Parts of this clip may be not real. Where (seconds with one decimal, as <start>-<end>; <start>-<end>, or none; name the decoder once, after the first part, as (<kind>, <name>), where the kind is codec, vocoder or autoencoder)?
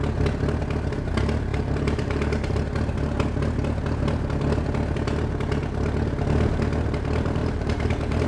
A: 1.5-2.6 (vocoder, BigVGAN v2); 7.4-8.3